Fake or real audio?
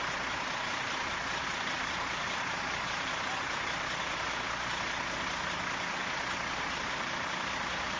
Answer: real